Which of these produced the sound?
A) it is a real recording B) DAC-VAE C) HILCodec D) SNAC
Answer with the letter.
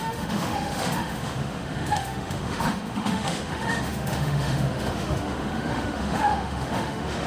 B